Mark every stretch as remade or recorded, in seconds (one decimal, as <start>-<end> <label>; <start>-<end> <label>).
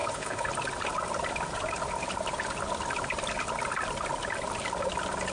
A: 0.0-0.5 remade; 0.5-5.3 recorded